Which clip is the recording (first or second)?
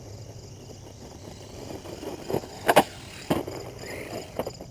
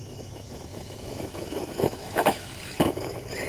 first